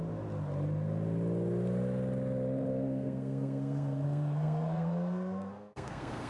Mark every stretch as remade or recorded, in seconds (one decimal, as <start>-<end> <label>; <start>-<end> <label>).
0.0-2.7 recorded; 2.7-6.3 remade